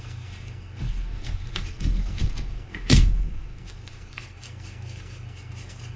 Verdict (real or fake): fake